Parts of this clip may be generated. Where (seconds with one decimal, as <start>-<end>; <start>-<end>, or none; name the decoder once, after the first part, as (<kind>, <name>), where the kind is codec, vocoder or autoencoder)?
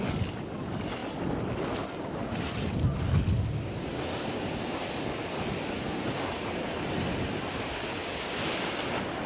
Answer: none